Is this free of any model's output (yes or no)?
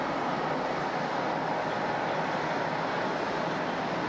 yes